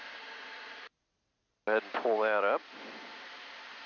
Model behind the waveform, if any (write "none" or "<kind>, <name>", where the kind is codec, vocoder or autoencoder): none